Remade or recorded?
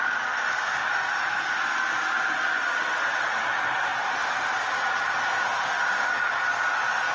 recorded